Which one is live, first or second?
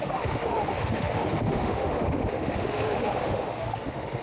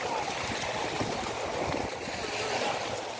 second